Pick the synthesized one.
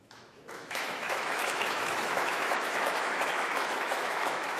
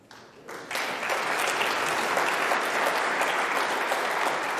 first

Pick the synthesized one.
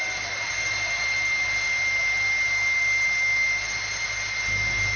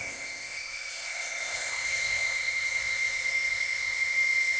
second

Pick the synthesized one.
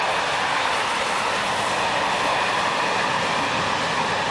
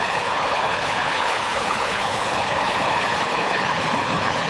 second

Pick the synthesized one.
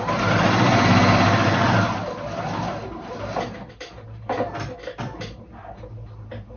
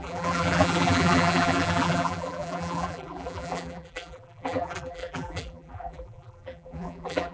second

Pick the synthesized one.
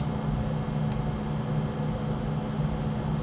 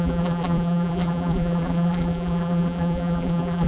second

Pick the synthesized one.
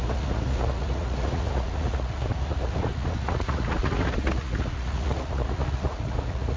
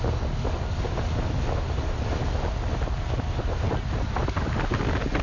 first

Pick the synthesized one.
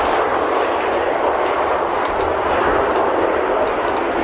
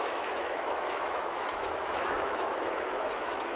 second